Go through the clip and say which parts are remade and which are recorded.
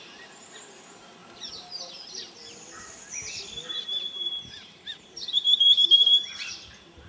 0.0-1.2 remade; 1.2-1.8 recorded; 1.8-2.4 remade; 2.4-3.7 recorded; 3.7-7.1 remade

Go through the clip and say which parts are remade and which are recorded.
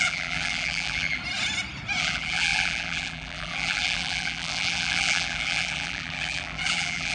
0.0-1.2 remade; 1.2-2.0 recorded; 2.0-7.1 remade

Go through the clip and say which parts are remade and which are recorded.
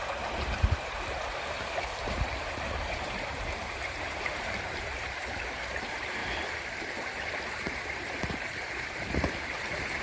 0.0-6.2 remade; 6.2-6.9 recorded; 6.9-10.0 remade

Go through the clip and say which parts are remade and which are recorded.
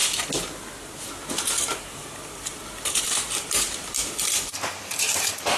0.0-2.0 recorded; 2.0-5.6 remade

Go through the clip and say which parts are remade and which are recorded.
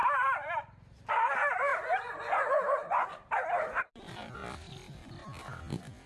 0.0-4.4 remade; 4.4-6.1 recorded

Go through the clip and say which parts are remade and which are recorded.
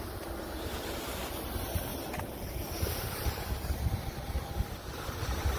0.0-5.6 remade